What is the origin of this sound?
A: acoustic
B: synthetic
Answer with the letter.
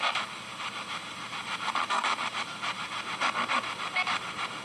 B